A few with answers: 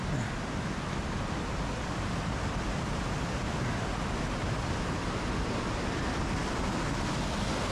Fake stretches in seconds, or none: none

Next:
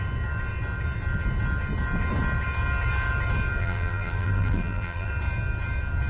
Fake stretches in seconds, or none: 3.6-5.1 (vocoder, BigVGAN v2)

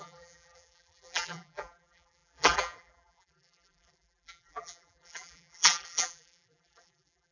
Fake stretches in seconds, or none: 0.0-7.3 (vocoder, BigVGAN v2)